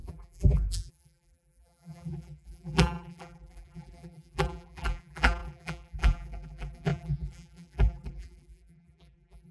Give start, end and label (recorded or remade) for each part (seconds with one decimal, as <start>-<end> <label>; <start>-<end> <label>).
0.0-9.5 remade